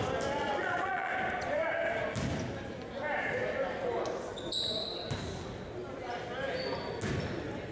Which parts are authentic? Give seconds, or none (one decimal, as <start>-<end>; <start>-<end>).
0.0-0.4; 1.1-7.7